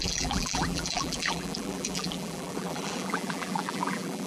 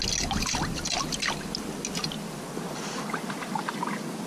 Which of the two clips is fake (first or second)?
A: first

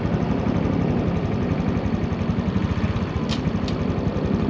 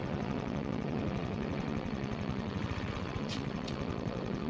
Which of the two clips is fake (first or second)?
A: second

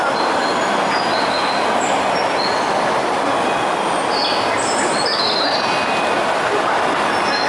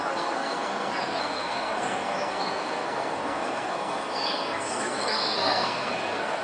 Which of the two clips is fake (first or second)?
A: second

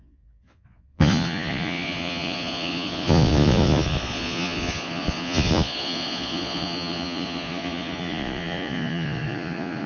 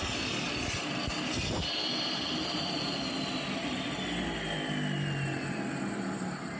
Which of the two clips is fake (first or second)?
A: first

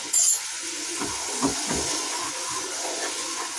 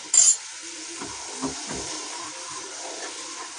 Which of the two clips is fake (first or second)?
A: first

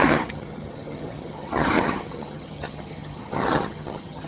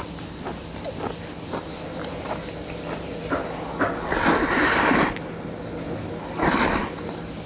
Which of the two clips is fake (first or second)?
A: first